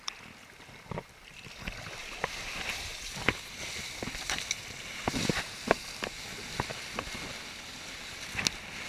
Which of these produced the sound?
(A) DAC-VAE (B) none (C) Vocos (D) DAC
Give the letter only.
B